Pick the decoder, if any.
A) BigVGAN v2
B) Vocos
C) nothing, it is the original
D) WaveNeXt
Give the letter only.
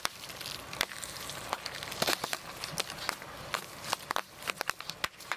C